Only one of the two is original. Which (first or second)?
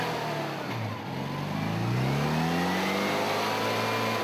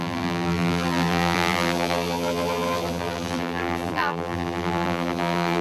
first